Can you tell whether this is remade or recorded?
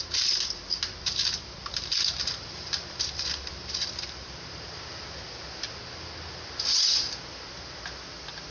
remade